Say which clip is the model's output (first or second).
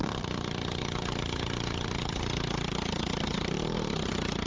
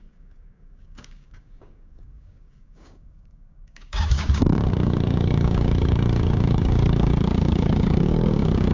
second